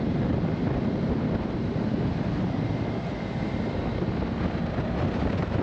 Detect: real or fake real